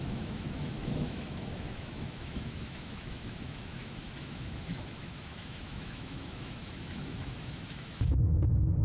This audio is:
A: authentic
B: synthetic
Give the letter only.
B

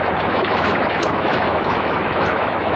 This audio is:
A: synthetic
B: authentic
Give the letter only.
A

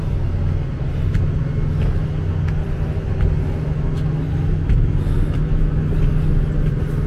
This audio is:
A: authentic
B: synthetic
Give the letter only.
A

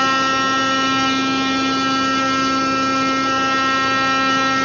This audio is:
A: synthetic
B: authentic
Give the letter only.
B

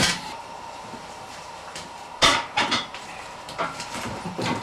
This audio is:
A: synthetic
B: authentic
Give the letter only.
A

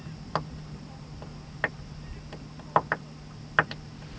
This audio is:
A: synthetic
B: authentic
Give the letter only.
B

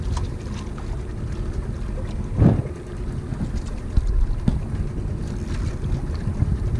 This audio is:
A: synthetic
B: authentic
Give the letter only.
B